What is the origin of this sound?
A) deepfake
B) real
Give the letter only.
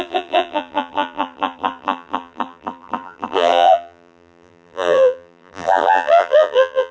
A